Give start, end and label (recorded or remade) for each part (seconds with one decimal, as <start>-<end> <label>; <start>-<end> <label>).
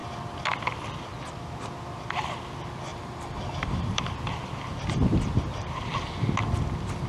0.0-2.9 recorded; 2.9-4.0 remade; 4.0-7.1 recorded